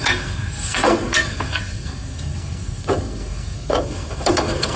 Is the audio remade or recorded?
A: remade